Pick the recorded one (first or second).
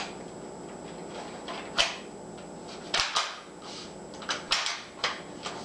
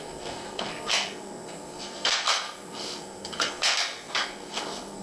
first